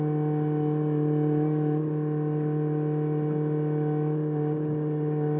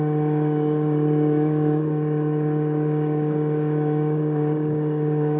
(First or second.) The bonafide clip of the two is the first